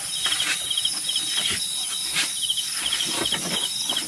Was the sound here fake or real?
real